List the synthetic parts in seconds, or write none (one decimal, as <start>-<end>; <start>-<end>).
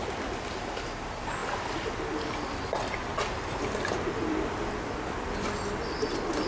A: none